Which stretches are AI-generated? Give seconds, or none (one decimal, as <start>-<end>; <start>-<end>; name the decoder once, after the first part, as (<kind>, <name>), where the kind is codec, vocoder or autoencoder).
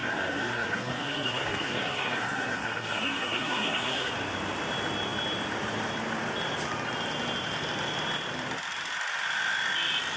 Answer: 0.0-4.1 (codec, SNAC)